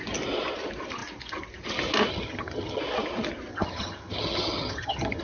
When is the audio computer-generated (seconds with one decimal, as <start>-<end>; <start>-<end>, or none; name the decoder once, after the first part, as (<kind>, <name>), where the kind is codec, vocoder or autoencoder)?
2.1-2.8 (vocoder, HiFi-GAN); 3.5-5.2